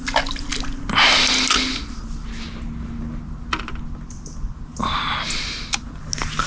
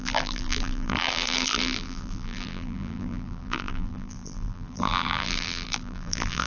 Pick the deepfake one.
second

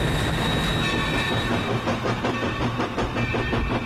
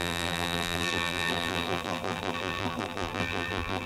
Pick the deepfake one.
second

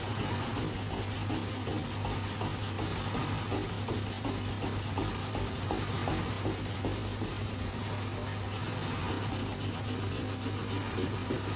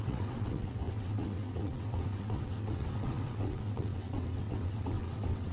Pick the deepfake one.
second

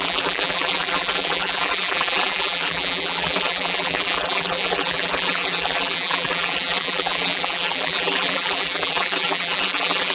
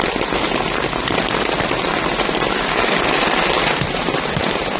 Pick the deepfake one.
first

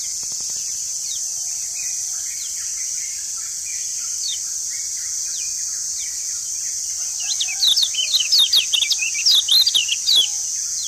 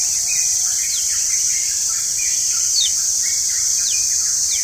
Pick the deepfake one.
second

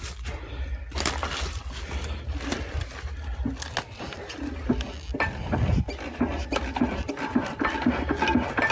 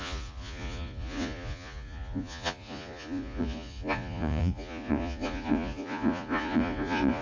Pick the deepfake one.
second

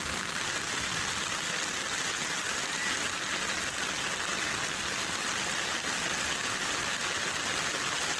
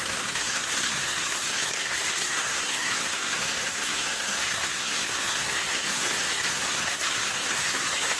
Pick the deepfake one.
second